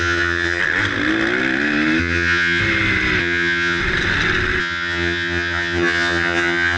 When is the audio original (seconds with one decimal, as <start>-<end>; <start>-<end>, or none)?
0.6-2.0; 2.6-3.2; 3.8-4.6

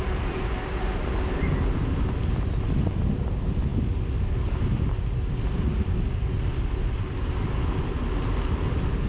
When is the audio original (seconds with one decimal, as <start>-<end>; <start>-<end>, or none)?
0.0-9.1

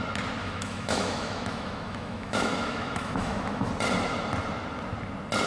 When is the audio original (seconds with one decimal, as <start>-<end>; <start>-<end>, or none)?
0.0-0.4; 3.7-5.5

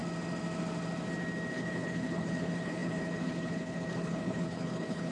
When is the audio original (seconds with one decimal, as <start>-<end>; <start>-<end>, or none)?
0.0-1.5

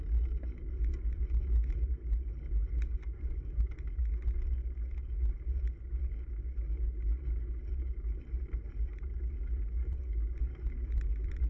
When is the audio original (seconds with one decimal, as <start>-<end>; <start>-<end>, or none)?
4.0-7.7; 10.0-11.5

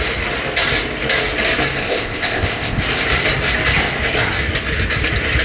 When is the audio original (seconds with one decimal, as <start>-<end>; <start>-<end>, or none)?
0.0-1.8; 2.8-5.4